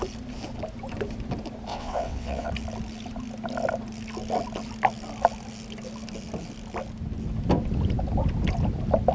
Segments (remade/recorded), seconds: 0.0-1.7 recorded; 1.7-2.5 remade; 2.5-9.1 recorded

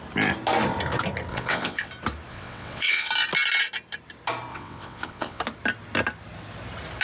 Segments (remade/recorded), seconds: 0.0-1.3 recorded; 1.3-1.9 remade; 1.9-2.3 recorded; 2.3-3.1 remade; 3.1-4.5 recorded; 4.5-5.4 remade; 5.4-7.0 recorded

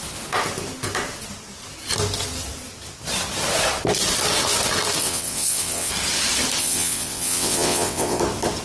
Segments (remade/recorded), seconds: 0.0-5.0 recorded; 5.0-5.9 remade; 5.9-6.6 recorded; 6.6-8.2 remade; 8.2-8.6 recorded

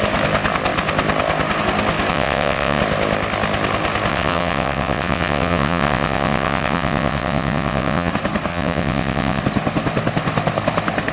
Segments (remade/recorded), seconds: 0.0-2.1 recorded; 2.1-2.8 remade; 2.8-4.1 recorded; 4.1-8.1 remade; 8.1-8.5 recorded; 8.5-9.4 remade; 9.4-11.1 recorded

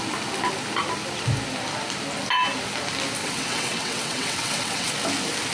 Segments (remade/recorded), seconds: 0.0-3.2 recorded; 3.2-4.9 remade; 4.9-5.5 recorded